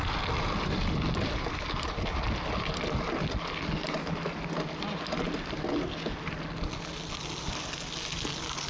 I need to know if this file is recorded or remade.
recorded